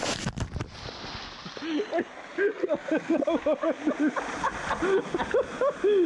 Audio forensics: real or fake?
real